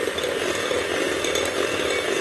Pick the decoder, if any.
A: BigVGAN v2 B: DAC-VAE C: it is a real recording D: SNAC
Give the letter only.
C